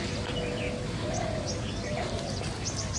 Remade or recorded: recorded